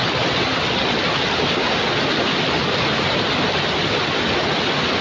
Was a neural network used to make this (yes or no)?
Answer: no